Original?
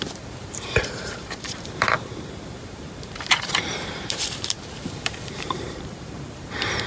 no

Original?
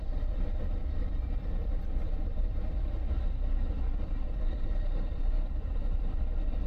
no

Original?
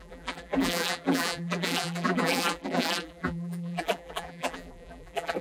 no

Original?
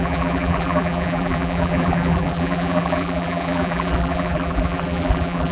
no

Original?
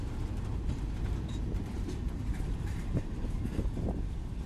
no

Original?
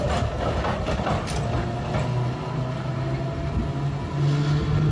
yes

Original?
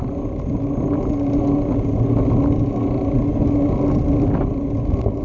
yes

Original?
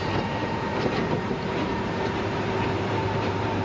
no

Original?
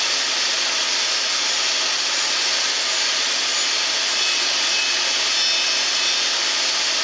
yes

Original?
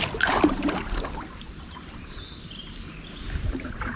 no